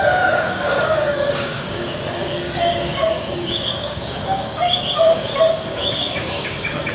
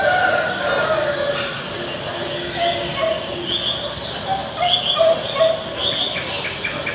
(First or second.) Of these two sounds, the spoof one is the first